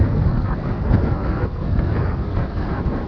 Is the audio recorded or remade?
remade